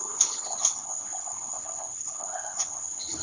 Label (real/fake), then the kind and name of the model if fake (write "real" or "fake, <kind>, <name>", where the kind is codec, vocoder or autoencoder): fake, codec, HILCodec